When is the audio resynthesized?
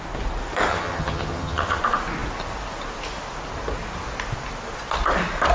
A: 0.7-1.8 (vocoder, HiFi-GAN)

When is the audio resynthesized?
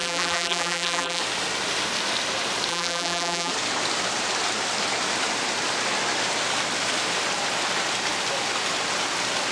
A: 0.0-1.2 (vocoder, BigVGAN v2); 2.7-3.5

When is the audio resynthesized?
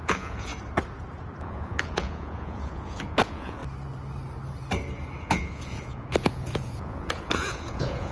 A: 0.0-0.5 (vocoder, Vocos); 1.4-3.6; 5.2-8.1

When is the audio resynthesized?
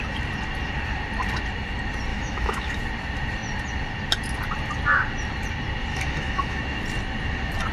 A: 2.1-2.8 (autoencoder, DAC-VAE); 5.9-6.6